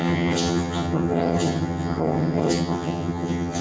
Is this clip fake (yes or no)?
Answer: yes